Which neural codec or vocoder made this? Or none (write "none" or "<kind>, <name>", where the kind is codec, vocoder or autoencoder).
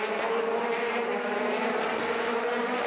vocoder, BigVGAN v2